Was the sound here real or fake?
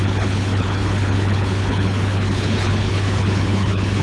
fake